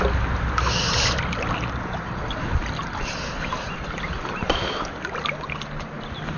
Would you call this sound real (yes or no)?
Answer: yes